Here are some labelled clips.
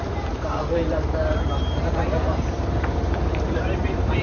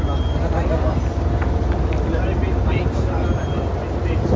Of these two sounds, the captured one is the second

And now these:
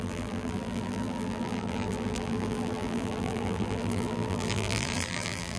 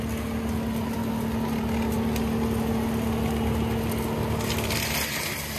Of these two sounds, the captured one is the second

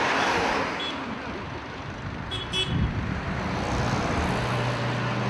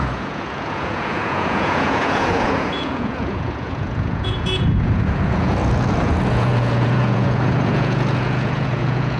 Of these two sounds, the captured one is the first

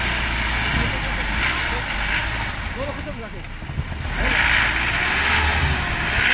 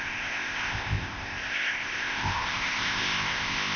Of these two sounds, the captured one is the first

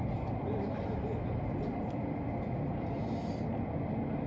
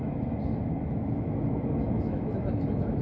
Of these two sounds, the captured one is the first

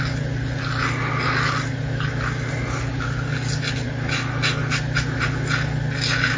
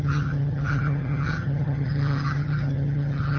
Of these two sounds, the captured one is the first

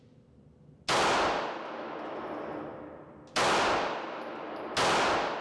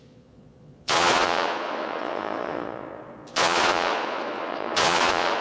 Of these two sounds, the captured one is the first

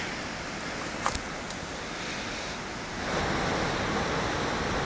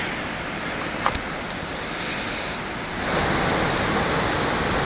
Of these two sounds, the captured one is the first